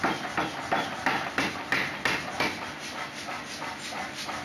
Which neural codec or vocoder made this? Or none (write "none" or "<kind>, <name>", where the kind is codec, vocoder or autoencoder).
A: none